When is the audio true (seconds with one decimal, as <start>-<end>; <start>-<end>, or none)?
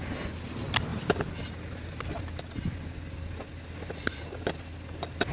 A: 0.0-5.3